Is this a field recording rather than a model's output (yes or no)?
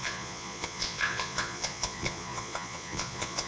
no